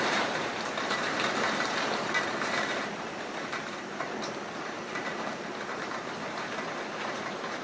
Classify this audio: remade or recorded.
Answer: remade